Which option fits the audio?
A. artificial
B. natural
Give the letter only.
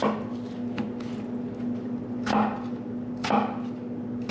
B